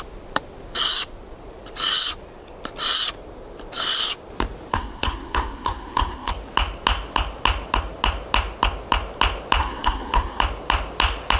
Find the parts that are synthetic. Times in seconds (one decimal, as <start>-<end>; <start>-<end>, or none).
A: 4.7-6.3; 9.6-10.4